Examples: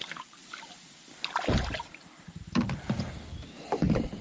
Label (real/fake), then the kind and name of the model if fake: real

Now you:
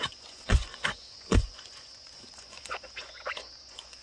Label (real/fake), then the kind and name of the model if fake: fake, vocoder, Vocos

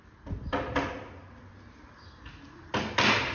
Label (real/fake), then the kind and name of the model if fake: real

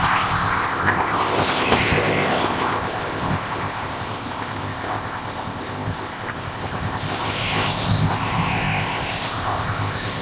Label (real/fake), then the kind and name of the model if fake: fake, codec, ZipCodec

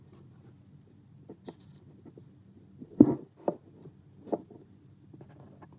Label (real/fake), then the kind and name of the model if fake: real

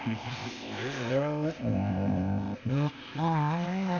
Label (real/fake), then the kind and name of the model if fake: fake, codec, ZipCodec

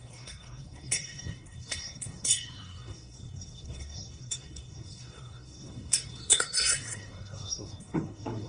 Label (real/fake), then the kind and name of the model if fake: fake, codec, SNAC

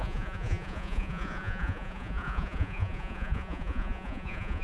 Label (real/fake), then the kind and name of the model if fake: fake, vocoder, Vocos